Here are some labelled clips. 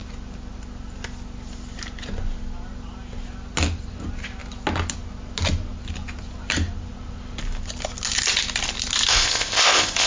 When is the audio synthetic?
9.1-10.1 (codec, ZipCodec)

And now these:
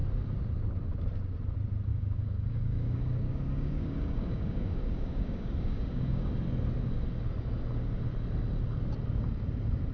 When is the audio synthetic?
1.9-6.3 (codec, DAC)

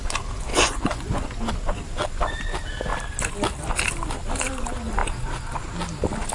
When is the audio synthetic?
0.5-1.5 (vocoder, Vocos)

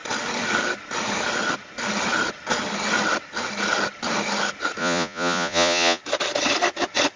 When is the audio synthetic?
4.8-6.0 (vocoder, Vocos)

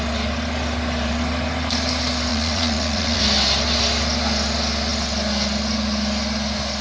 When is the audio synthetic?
2.3-3.2 (vocoder, Vocos)

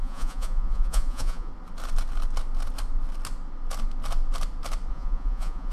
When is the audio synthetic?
0.0-1.5 (vocoder, Vocos); 4.9-5.7

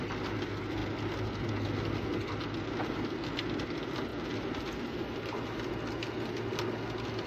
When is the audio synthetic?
none

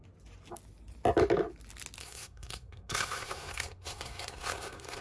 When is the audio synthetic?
2.0-5.0 (codec, SNAC)